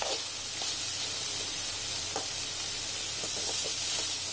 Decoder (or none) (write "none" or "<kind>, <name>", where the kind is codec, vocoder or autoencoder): none